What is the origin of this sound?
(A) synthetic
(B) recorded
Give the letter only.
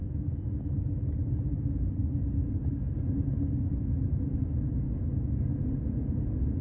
B